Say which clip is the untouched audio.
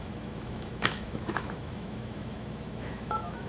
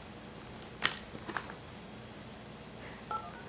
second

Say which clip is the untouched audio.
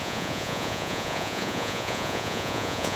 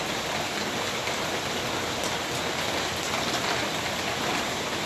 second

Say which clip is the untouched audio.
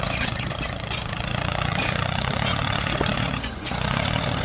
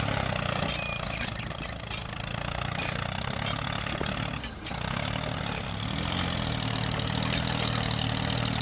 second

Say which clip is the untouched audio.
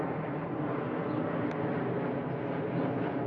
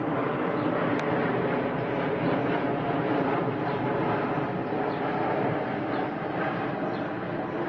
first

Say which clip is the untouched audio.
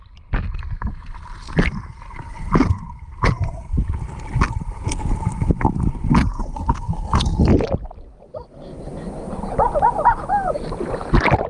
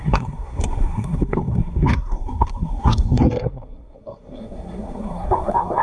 first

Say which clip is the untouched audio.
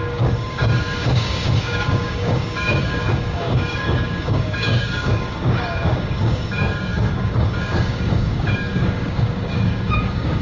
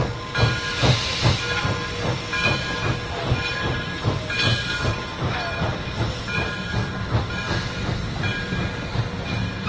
second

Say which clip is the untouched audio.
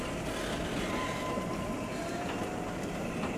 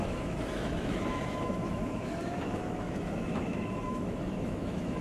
first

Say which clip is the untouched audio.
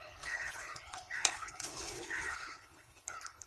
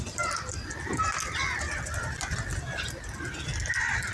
second